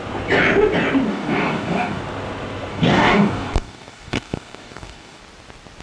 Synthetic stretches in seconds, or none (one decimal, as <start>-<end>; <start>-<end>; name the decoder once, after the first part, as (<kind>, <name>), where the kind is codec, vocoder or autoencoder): 1.1-2.0 (codec, DAC); 2.7-5.2